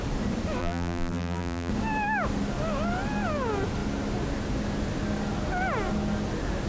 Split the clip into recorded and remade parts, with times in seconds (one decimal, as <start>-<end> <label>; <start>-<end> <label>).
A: 0.0-0.6 recorded; 0.6-1.7 remade; 1.7-6.7 recorded